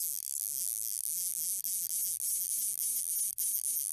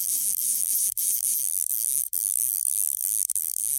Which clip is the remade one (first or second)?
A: second